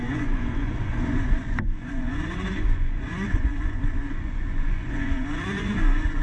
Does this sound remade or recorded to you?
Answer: remade